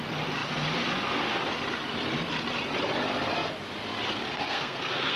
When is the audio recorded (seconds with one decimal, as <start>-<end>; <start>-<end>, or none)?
0.0-4.3

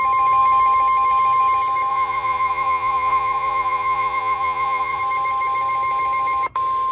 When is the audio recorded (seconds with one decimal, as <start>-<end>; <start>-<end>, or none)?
0.0-1.9; 5.0-6.9

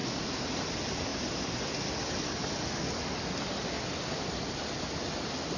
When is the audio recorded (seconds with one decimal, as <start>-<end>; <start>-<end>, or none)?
0.0-5.6

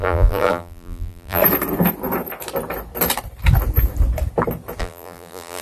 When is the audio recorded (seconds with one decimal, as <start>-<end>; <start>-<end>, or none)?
1.4-4.8

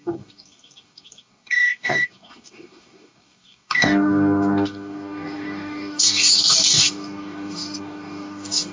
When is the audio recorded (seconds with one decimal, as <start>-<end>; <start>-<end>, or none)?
none

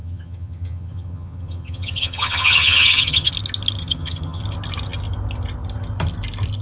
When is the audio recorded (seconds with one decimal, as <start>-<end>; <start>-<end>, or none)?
3.3-3.8; 4.4-6.6